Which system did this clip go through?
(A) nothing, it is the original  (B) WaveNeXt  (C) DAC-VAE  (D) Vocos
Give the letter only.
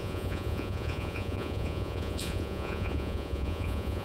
D